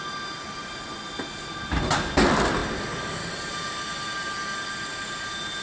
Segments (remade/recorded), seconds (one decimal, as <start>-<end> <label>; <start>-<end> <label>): 0.0-5.6 recorded